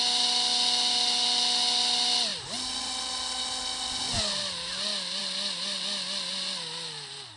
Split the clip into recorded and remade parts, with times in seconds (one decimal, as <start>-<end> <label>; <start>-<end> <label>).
0.0-7.4 recorded